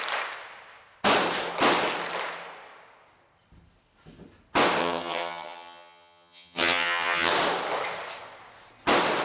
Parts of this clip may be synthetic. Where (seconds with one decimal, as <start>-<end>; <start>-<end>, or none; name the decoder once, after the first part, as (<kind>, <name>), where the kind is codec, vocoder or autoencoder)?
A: 4.8-7.3 (vocoder, HiFi-GAN)